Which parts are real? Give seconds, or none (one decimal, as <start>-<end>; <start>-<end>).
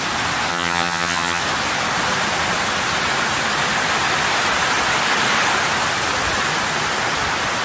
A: 0.0-0.5; 1.4-7.6